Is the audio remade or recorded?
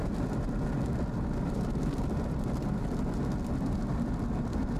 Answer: recorded